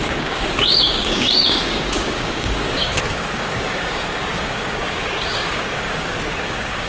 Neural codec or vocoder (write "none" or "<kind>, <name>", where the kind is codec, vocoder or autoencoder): codec, DAC